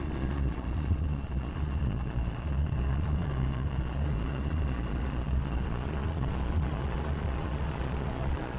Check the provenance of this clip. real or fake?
fake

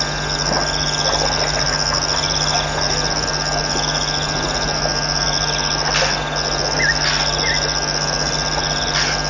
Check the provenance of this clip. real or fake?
real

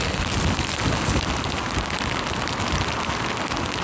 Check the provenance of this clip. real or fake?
real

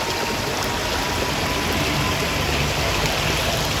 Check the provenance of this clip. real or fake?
real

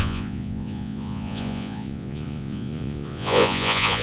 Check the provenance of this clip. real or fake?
fake